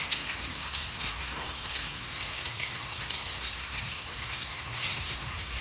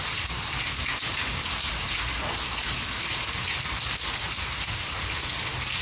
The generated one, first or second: first